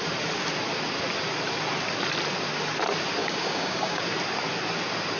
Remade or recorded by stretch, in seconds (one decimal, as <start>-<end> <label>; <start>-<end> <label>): 0.0-3.2 recorded; 3.2-4.0 remade; 4.0-5.2 recorded